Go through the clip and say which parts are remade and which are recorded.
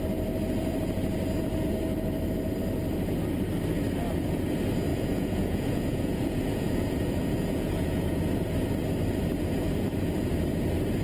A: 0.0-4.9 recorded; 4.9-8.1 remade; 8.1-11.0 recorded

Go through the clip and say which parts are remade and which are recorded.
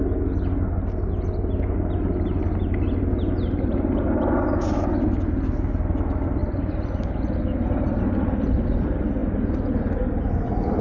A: 0.0-10.8 recorded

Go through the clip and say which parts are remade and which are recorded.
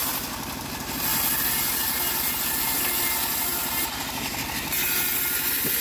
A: 0.0-5.8 recorded